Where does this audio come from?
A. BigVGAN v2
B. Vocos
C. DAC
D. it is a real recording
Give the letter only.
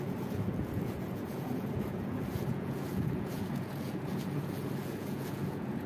B